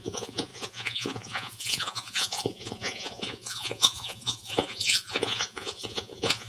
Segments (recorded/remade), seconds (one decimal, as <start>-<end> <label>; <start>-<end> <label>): 0.0-6.5 remade